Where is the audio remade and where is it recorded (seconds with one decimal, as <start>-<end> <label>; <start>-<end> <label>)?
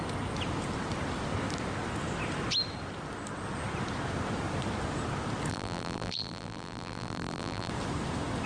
0.0-5.5 recorded; 5.5-7.7 remade; 7.7-8.5 recorded